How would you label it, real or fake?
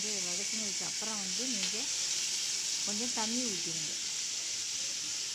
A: real